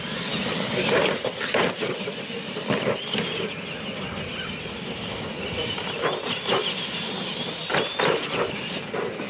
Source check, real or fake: real